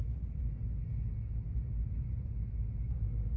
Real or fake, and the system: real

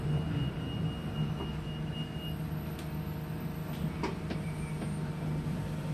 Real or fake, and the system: real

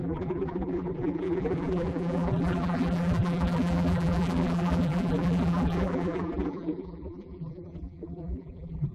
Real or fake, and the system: fake, vocoder, BigVGAN v2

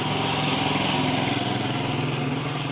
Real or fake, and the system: real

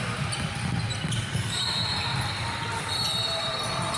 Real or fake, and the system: real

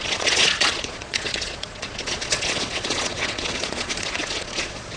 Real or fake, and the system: fake, vocoder, Vocos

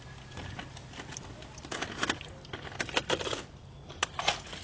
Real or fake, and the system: real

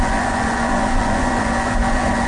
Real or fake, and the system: fake, vocoder, Vocos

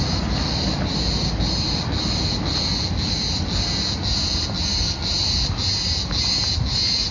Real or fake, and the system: real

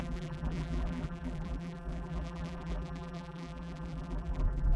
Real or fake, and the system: fake, vocoder, BigVGAN v2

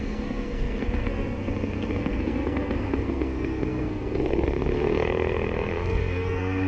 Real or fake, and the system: fake, codec, SNAC